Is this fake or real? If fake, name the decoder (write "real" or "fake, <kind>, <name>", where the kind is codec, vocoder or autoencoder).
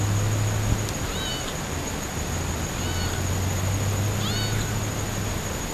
real